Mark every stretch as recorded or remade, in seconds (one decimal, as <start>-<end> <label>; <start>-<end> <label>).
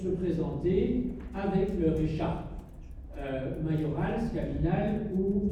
0.0-5.5 recorded